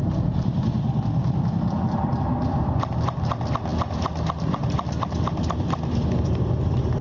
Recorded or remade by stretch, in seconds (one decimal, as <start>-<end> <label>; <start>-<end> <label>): 0.0-3.0 remade; 3.0-7.0 recorded